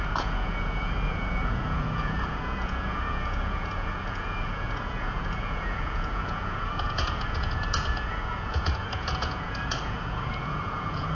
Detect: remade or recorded remade